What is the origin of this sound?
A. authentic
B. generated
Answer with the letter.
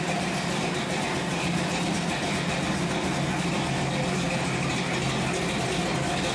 A